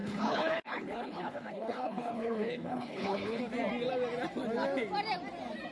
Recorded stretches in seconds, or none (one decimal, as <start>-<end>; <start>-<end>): 3.4-5.7